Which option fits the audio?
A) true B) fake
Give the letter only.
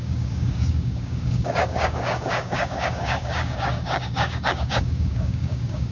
B